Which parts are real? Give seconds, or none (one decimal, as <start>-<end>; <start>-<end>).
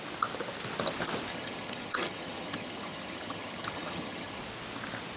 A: 0.0-1.3; 4.4-5.2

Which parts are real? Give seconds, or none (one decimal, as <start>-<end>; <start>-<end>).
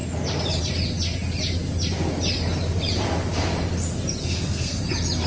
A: 0.0-4.2; 4.8-5.3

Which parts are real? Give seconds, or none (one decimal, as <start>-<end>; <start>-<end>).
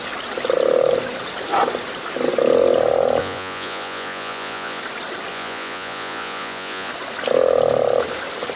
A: 0.0-3.2; 4.8-5.3; 6.9-8.6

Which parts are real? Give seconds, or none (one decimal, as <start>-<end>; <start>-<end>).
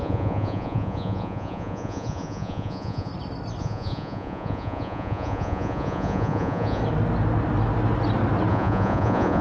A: 3.1-3.6; 6.8-8.5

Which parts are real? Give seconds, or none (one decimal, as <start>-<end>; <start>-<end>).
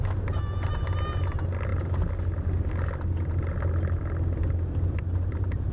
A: 0.0-5.7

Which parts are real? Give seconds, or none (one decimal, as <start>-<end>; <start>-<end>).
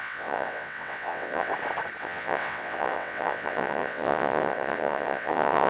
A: 1.5-2.0